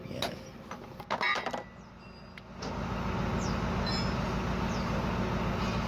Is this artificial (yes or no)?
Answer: no